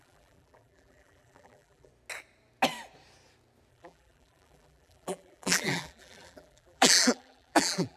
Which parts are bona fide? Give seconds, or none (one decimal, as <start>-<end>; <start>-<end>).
1.9-3.7